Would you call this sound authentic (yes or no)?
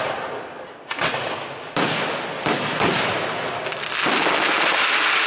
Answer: yes